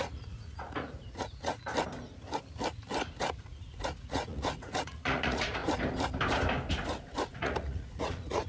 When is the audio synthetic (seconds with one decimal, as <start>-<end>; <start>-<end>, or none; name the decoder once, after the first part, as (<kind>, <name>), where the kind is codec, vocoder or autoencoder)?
0.0-1.7 (vocoder, Vocos); 3.2-5.6; 7.0-8.5